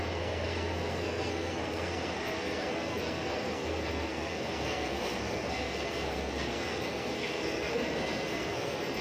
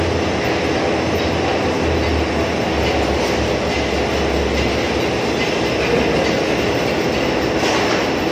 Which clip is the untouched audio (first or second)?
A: second